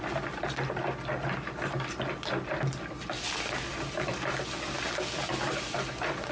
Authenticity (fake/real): real